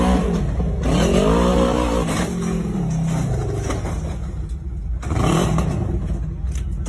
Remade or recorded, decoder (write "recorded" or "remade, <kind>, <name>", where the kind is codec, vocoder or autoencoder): recorded